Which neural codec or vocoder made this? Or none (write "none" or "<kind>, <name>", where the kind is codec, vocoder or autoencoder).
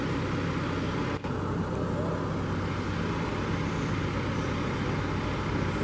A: none